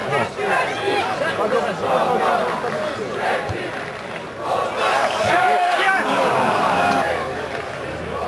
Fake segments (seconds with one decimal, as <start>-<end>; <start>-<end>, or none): 5.0-7.5